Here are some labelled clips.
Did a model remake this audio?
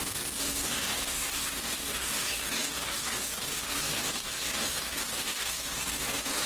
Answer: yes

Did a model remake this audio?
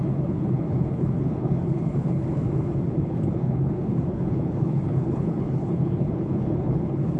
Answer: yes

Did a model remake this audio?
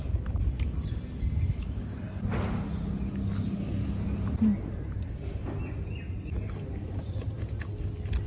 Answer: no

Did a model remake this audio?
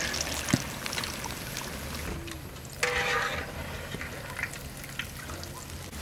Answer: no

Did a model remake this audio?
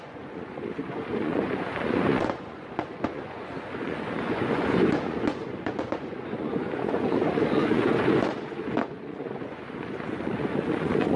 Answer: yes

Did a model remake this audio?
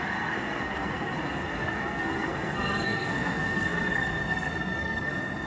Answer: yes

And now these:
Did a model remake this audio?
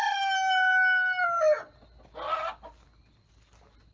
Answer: no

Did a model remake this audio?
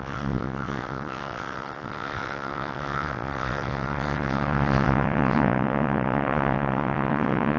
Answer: yes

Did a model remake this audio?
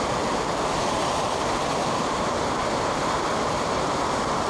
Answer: yes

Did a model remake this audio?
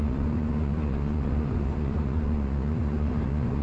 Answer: yes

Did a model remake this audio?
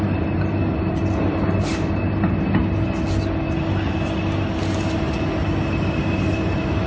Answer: no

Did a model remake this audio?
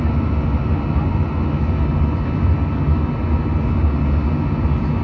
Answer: no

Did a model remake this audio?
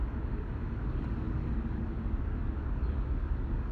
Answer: yes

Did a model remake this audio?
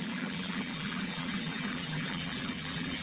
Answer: yes